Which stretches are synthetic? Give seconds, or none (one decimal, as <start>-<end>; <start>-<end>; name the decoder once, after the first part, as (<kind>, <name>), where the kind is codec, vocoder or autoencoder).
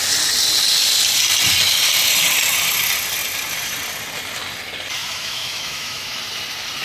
5.0-6.2 (autoencoder, DAC-VAE)